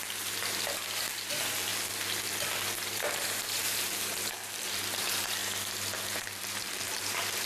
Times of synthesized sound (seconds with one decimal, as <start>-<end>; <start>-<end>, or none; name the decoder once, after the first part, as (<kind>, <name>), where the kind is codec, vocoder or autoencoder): 0.0-1.7 (vocoder, BigVGAN v2); 2.8-5.4; 6.0-7.5